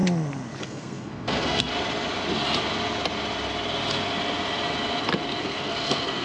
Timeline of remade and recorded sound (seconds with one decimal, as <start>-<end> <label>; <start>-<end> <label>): 0.0-0.6 recorded; 0.6-1.7 remade; 1.7-5.4 recorded; 5.4-6.2 remade